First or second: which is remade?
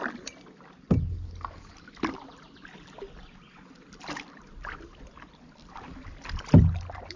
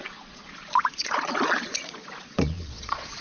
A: second